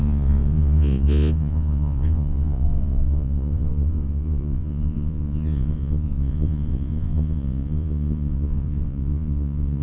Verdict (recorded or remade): remade